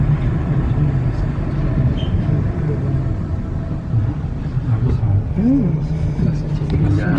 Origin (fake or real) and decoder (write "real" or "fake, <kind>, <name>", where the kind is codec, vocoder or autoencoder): real